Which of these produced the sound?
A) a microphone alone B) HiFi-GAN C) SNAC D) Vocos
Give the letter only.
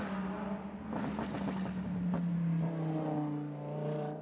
A